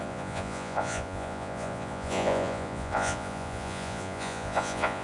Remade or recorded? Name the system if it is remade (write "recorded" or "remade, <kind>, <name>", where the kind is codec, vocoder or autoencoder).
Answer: remade, vocoder, Vocos